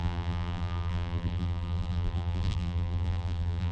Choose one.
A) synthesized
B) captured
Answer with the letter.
A